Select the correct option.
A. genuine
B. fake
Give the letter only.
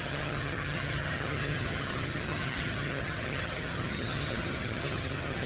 B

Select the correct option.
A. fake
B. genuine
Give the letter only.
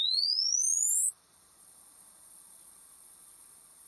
A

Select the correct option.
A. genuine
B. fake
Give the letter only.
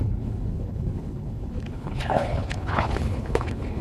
B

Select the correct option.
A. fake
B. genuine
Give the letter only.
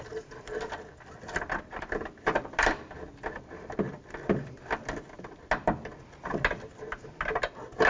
B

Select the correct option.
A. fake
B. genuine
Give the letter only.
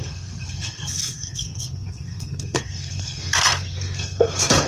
A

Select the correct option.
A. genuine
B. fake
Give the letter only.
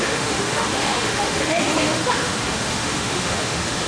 B